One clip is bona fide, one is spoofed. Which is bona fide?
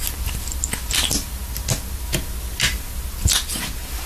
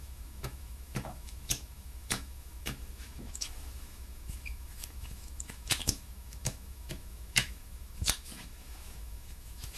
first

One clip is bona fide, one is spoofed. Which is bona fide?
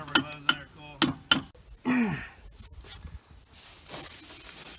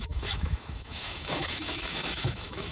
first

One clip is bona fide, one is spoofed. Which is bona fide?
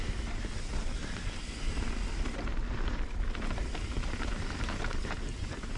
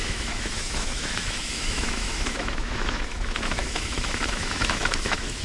first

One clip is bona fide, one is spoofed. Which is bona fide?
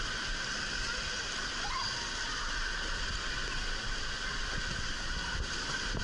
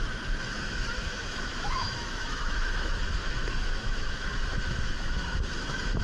first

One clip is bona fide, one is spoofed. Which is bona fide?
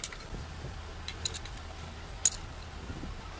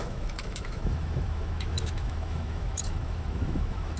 first